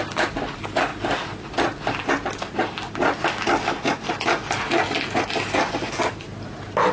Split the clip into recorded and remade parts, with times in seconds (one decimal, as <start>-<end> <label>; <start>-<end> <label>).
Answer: 0.0-6.9 recorded